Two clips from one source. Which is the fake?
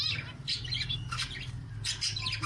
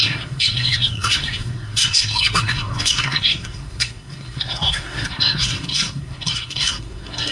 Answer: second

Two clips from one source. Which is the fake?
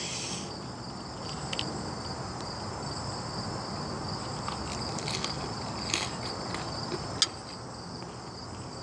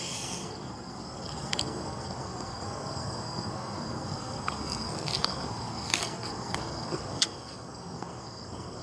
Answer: second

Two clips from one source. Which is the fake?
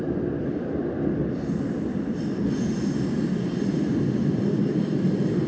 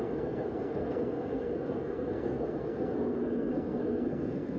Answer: second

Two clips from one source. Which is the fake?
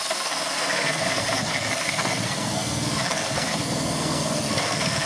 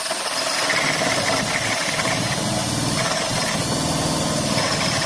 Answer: first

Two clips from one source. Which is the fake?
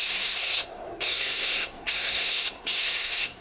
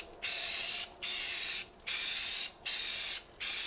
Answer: first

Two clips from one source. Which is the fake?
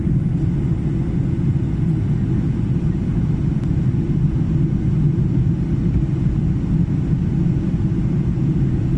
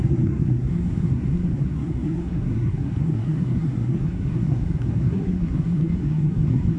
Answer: second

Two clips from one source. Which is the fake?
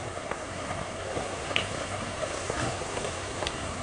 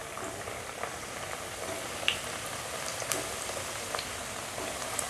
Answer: first